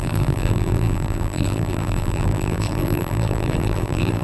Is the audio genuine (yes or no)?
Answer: no